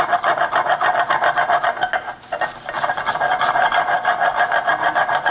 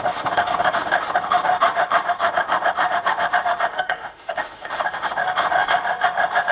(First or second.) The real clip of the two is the first